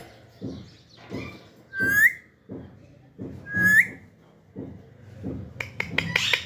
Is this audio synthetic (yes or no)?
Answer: no